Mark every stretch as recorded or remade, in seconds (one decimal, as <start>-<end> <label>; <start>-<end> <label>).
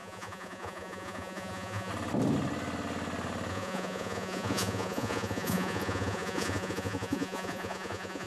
0.0-1.9 remade; 1.9-3.5 recorded; 3.5-8.3 remade